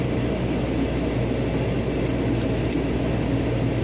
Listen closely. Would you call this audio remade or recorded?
recorded